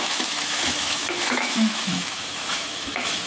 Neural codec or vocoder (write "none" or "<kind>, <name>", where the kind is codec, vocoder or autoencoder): autoencoder, DAC-VAE